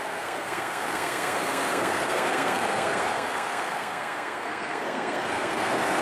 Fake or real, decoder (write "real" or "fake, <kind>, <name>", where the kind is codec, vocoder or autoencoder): fake, codec, SNAC